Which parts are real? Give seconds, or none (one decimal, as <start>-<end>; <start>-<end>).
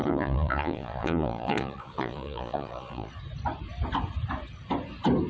3.1-5.3